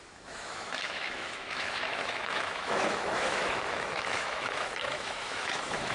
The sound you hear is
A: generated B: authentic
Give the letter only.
A